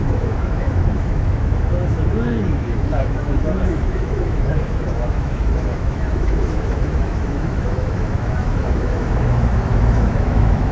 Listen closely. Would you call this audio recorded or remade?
remade